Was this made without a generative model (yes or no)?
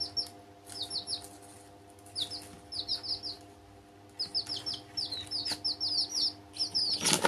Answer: yes